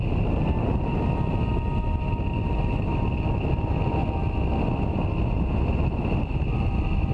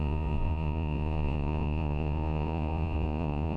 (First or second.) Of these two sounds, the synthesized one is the second